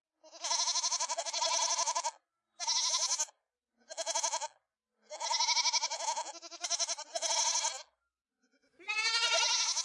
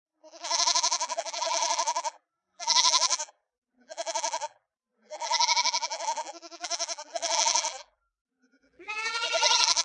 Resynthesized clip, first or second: second